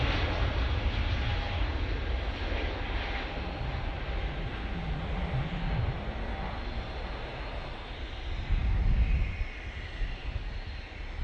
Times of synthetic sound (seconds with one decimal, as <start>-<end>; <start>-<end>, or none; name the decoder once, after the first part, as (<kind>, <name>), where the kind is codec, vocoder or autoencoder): none